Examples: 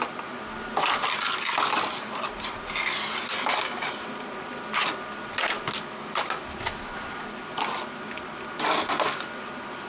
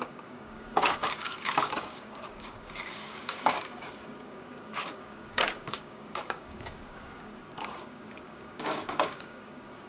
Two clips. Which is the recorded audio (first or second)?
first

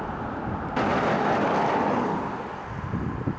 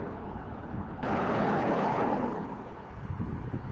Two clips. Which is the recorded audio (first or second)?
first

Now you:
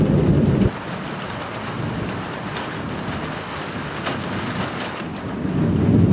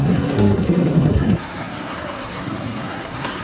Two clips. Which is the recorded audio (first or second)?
first